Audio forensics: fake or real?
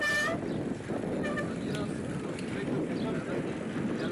real